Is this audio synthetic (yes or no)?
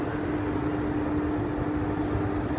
no